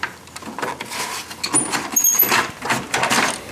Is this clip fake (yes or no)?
no